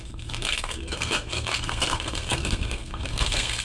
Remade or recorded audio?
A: remade